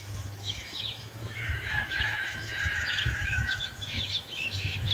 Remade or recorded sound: remade